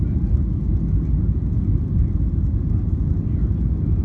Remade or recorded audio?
recorded